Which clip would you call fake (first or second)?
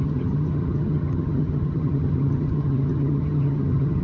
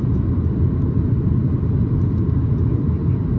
first